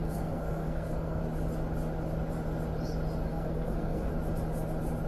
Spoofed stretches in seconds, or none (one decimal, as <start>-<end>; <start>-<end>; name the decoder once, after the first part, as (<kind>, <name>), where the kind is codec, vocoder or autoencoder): 0.0-1.2 (codec, SNAC); 3.3-4.1